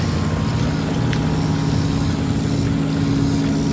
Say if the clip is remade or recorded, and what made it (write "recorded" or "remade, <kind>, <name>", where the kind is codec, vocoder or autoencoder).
recorded